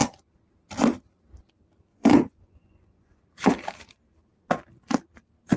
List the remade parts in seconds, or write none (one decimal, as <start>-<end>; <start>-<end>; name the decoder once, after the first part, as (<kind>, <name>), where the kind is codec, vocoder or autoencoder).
1.9-3.2 (vocoder, Vocos)